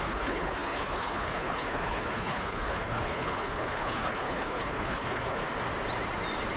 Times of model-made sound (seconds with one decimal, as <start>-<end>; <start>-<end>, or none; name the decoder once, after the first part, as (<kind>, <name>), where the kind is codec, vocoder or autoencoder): 0.0-5.4 (codec, HILCodec)